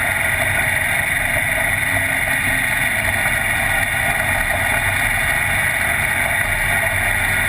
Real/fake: real